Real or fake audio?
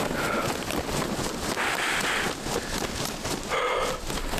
real